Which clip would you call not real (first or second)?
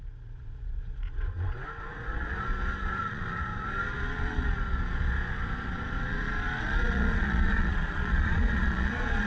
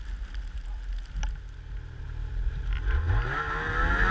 first